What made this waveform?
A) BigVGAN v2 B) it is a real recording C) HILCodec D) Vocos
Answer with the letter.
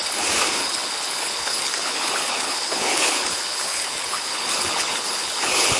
C